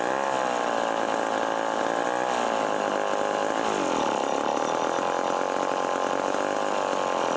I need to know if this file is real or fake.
real